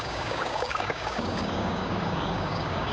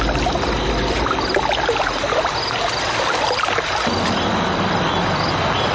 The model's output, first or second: first